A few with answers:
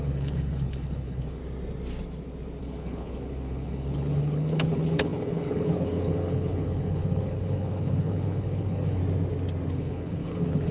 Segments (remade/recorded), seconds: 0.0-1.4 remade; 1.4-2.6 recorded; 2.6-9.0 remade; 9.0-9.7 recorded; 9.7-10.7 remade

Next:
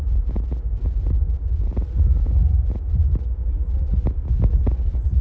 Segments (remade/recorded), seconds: 0.0-5.2 recorded

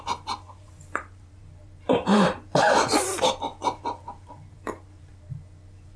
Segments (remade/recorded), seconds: 0.0-6.0 remade